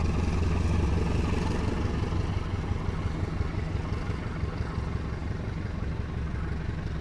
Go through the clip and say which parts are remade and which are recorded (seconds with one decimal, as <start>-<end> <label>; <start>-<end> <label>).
0.0-7.0 recorded